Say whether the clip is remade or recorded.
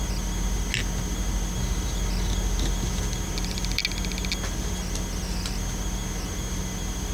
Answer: recorded